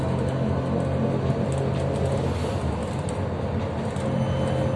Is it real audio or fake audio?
real